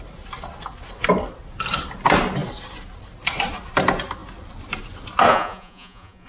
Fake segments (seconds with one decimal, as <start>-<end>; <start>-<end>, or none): 5.3-6.3